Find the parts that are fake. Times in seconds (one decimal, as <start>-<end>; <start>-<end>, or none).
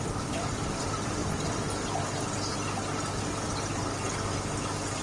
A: none